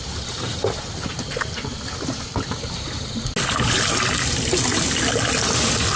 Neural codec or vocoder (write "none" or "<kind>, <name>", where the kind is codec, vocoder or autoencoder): none